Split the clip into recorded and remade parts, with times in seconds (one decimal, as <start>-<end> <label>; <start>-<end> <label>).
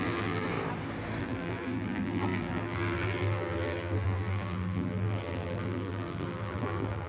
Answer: 0.0-0.5 remade; 0.5-1.2 recorded; 1.2-7.1 remade